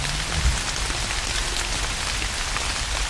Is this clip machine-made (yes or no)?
no